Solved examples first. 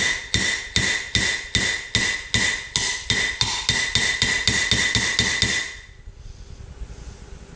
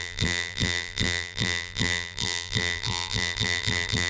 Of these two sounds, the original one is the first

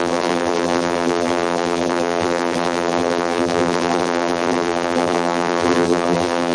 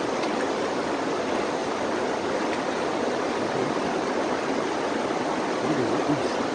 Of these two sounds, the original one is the second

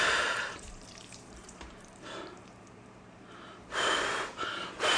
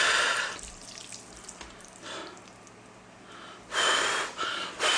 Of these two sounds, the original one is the second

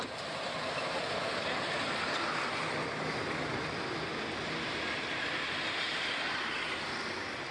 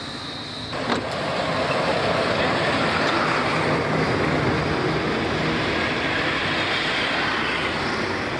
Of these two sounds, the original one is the second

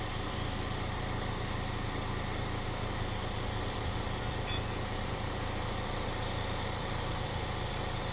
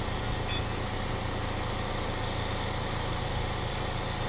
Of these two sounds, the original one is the second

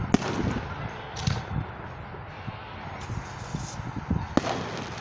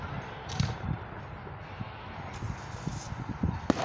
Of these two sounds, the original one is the first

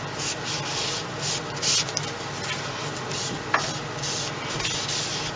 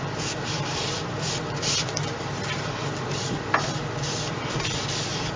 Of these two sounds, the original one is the first